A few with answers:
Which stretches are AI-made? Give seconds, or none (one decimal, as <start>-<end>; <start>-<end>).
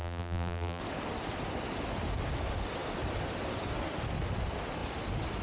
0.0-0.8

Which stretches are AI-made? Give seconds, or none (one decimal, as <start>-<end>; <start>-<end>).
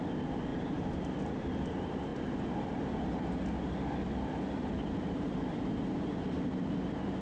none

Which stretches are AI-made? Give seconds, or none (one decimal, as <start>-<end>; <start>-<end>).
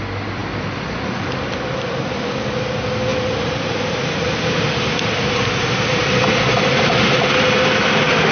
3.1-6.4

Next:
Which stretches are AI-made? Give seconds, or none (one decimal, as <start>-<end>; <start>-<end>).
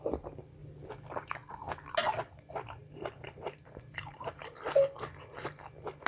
2.8-4.5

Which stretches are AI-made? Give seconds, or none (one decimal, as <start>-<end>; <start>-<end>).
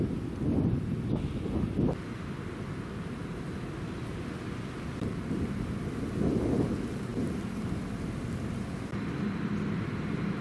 7.1-9.5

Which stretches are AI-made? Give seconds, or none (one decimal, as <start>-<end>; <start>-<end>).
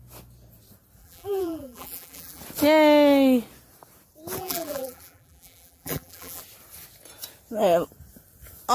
1.0-2.4; 4.4-6.4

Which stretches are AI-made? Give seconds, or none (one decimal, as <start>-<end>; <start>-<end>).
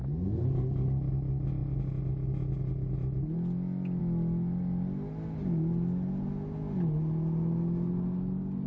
none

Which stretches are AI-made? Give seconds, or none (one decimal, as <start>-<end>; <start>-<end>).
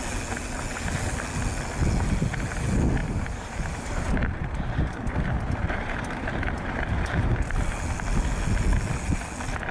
3.0-6.8